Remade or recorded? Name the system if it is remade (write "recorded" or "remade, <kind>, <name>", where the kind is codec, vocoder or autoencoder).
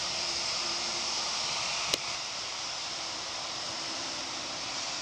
remade, vocoder, BigVGAN v2